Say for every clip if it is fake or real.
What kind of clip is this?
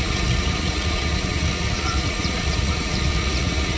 fake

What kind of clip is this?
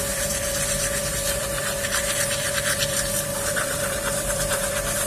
fake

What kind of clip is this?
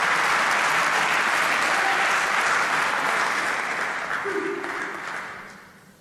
real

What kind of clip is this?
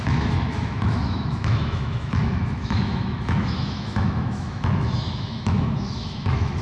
fake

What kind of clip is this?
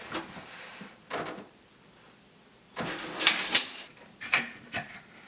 fake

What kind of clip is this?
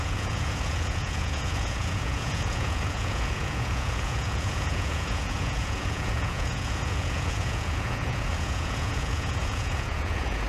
fake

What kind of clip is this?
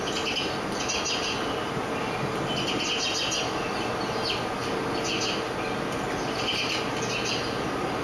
real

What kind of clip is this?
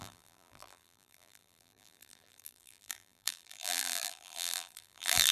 fake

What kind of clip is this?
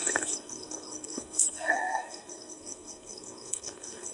fake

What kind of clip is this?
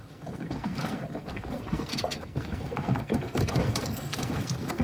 fake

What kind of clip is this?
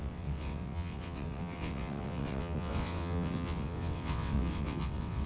fake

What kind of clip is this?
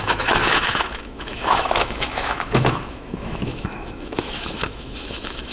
fake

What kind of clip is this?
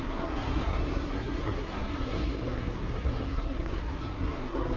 fake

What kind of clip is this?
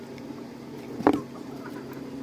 real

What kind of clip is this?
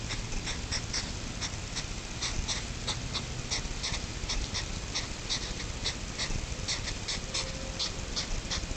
real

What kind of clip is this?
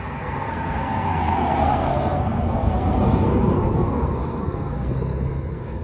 fake